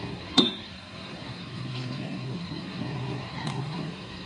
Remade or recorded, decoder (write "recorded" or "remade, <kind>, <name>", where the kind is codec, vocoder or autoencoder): remade, codec, SNAC